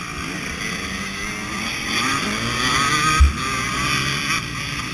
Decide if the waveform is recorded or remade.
recorded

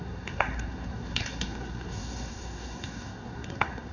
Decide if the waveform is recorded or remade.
remade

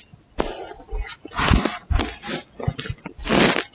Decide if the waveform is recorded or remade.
recorded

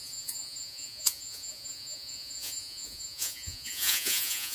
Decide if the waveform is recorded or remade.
remade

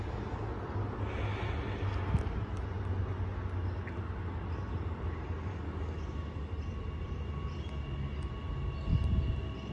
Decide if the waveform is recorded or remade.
recorded